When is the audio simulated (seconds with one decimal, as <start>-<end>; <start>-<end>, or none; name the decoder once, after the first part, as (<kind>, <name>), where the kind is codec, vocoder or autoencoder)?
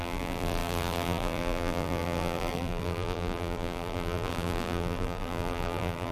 0.0-6.1 (vocoder, BigVGAN v2)